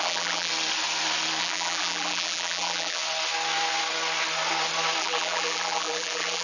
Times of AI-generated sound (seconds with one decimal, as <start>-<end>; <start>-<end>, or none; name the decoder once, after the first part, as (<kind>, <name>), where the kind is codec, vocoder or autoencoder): 0.0-0.5 (vocoder, BigVGAN v2); 1.4-3.0; 5.0-6.4